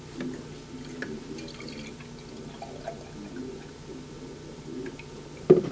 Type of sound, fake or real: real